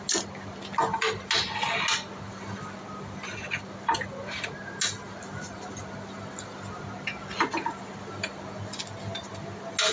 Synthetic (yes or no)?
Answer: no